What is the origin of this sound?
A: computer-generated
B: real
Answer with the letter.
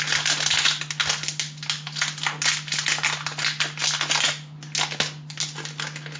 B